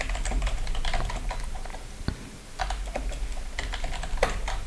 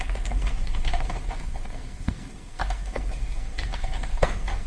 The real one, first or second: first